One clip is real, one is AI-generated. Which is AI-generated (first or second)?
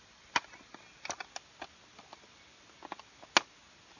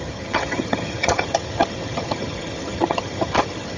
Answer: second